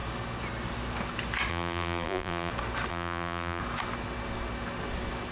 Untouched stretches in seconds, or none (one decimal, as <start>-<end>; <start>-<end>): 0.0-1.5; 2.5-2.9; 3.6-5.3